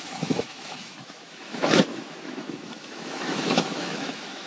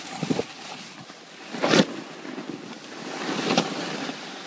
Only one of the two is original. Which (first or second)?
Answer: second